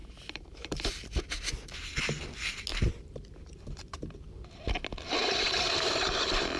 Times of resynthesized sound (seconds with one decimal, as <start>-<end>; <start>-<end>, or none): 0.0-1.2; 2.7-4.7; 5.2-6.6